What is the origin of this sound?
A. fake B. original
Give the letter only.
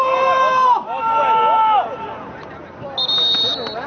B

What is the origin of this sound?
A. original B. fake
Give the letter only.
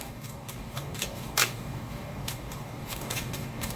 B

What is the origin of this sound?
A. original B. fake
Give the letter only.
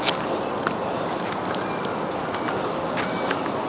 A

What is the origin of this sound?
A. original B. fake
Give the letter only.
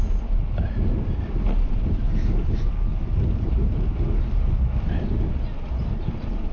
A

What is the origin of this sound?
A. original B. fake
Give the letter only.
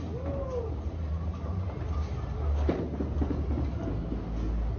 A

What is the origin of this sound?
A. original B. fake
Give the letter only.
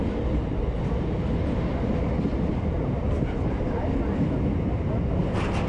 A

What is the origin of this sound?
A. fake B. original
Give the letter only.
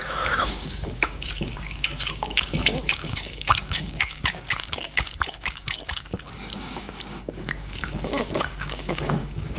A